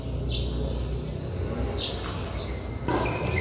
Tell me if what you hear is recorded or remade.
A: recorded